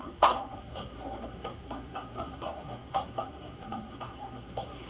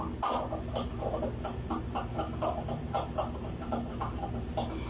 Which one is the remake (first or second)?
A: first